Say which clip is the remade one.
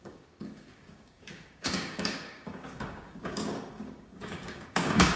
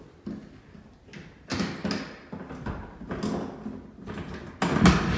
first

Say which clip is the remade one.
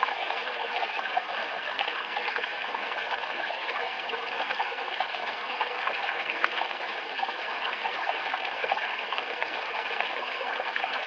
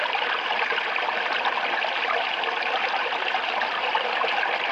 first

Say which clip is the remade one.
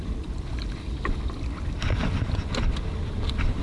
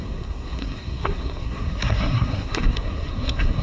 second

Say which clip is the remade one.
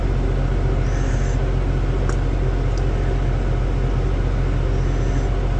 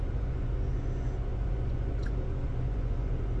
second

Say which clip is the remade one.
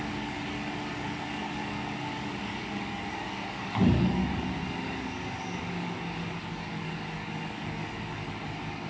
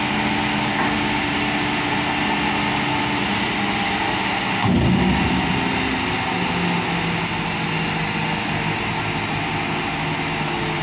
first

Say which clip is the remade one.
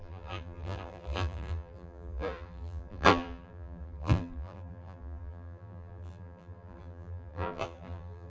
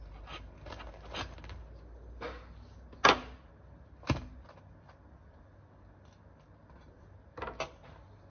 first